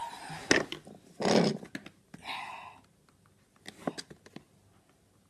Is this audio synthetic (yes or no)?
no